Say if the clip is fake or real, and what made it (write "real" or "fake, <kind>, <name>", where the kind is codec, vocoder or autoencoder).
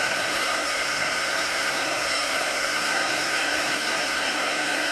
fake, codec, SNAC